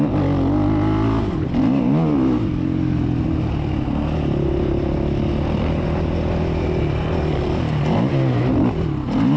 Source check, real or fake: real